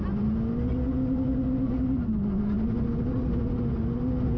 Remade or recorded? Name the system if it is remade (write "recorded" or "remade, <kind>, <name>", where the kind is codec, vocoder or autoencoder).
recorded